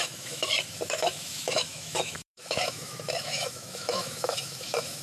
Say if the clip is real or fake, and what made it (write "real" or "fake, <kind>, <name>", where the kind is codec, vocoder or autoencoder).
fake, autoencoder, DAC-VAE